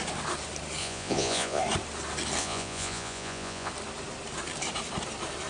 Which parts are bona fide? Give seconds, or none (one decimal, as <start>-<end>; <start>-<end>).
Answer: 0.0-0.8; 1.6-2.4; 3.7-5.5